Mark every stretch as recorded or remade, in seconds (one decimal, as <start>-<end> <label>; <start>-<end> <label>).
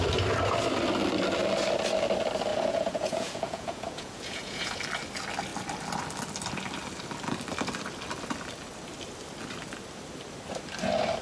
0.0-2.5 recorded; 2.5-4.8 remade; 4.8-11.2 recorded